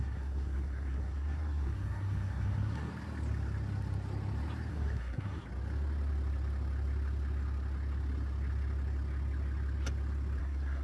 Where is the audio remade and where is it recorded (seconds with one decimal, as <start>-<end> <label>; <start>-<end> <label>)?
0.0-2.9 remade; 2.9-4.7 recorded; 4.7-5.4 remade; 5.4-10.4 recorded; 10.4-10.8 remade